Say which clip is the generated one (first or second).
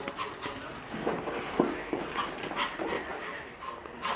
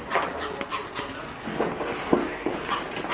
first